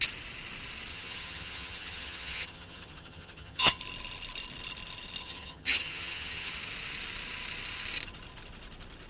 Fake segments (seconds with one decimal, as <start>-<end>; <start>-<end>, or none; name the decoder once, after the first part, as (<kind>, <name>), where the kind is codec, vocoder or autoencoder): 0.9-3.8 (vocoder, HiFi-GAN); 5.2-6.5